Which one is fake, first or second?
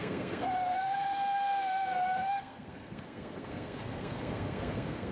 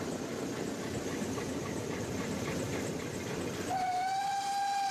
first